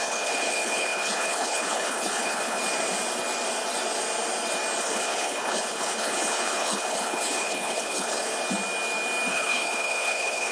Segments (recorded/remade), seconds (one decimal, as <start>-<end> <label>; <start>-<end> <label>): 0.0-2.6 remade; 2.6-4.8 recorded; 4.8-8.3 remade; 8.3-9.3 recorded; 9.3-10.5 remade